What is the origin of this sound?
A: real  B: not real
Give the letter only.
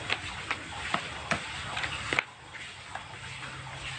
A